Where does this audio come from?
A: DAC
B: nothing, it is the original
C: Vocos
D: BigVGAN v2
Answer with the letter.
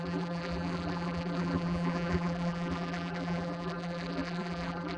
D